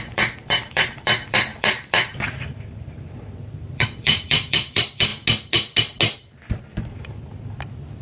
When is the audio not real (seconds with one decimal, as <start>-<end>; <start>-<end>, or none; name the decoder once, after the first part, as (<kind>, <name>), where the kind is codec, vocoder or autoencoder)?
0.0-5.1 (vocoder, BigVGAN v2); 6.6-8.0